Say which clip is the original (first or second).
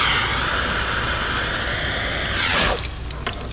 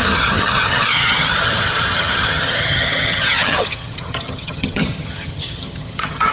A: first